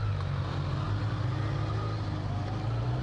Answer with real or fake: real